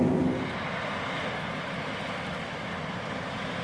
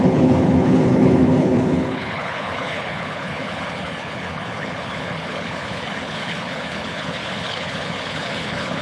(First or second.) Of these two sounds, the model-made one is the second